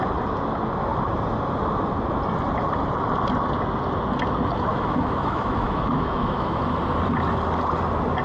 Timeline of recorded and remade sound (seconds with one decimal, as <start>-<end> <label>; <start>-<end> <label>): 0.0-4.7 recorded; 4.7-6.8 remade; 6.8-8.2 recorded